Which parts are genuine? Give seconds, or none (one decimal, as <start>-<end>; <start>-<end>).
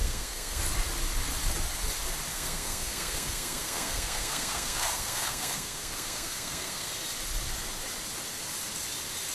0.6-2.3; 6.9-9.3